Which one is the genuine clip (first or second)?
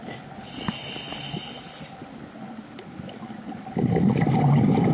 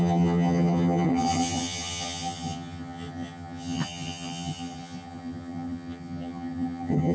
first